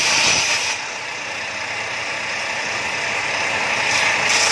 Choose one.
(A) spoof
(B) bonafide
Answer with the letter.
B